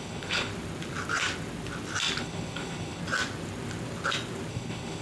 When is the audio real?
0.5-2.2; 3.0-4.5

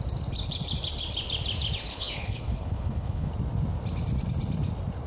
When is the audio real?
0.0-1.9; 3.3-5.1

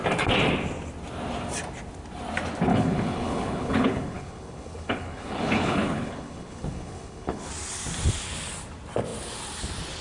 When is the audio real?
0.0-2.7; 7.5-10.0

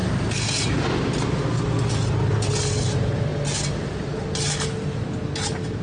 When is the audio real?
0.0-5.8

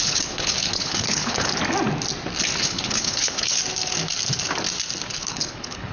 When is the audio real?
1.5-2.6; 3.6-5.1

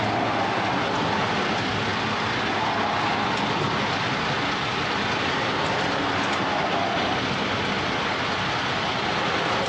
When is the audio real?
0.0-9.7

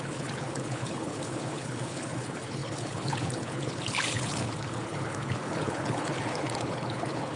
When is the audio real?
none

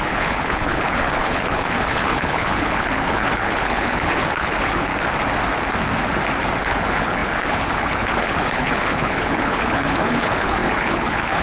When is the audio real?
4.9-6.6